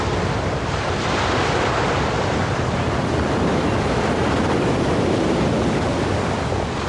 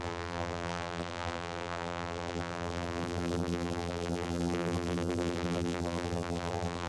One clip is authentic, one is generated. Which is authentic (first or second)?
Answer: first